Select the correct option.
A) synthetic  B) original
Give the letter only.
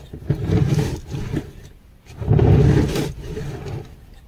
B